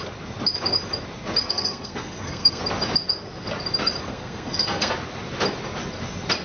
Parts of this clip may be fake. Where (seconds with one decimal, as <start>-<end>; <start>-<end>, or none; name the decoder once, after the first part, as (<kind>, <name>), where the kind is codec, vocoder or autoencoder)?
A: 1.4-2.6 (codec, SNAC); 4.1-4.9